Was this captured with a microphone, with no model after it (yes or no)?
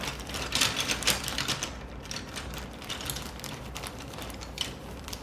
no